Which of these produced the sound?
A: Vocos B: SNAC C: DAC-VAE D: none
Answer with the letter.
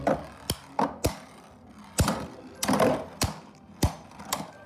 D